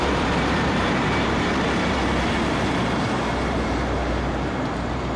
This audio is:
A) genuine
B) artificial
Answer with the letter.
B